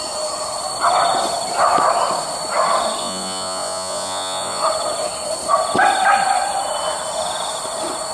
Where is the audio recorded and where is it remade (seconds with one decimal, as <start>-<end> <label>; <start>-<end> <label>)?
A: 0.0-3.0 recorded; 3.0-4.6 remade; 4.6-8.1 recorded